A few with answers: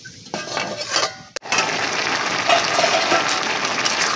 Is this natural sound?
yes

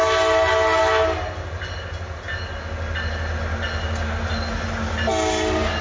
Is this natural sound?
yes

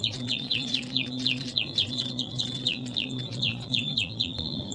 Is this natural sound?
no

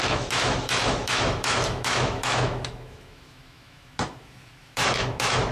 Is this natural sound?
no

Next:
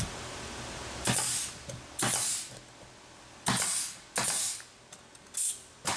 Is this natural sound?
yes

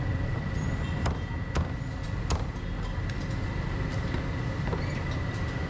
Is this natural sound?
yes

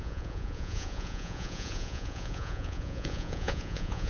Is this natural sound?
no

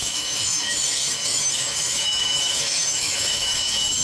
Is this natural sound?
no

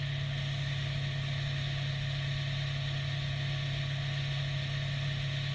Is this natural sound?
yes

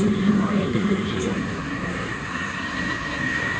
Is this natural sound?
no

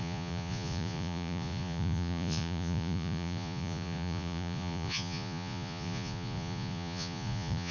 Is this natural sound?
no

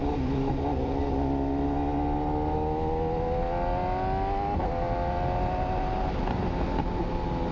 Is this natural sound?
yes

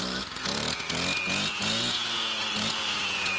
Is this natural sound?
no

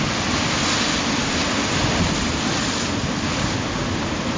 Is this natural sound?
yes